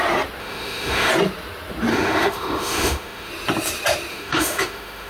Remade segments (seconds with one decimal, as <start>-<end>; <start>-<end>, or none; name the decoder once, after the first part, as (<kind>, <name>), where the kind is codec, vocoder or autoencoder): 0.4-1.1 (autoencoder, DAC-VAE); 1.9-3.3; 4.1-5.1